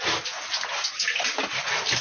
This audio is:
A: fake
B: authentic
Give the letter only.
B